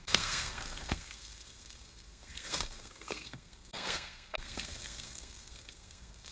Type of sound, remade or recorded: remade